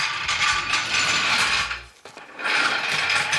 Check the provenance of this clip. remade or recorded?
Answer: recorded